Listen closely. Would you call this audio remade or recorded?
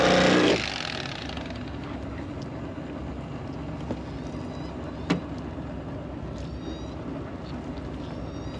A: recorded